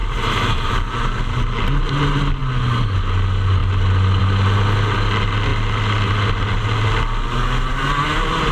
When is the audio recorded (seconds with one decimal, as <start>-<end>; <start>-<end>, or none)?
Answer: 0.7-8.5